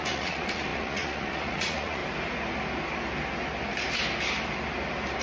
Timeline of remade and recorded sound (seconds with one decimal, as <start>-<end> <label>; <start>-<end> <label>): 0.0-2.0 remade; 2.0-5.2 recorded